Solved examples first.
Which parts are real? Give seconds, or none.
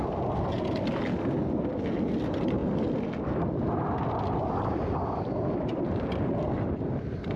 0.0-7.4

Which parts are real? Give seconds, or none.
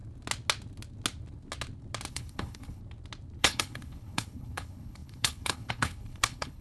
0.0-2.1; 2.8-3.4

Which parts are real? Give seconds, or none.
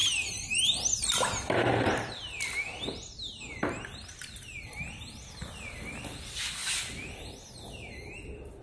0.0-8.6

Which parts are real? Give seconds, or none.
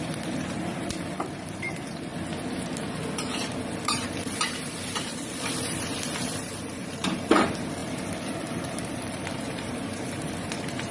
2.1-2.9